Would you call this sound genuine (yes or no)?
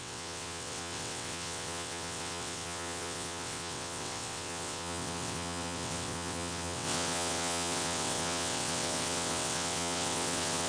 no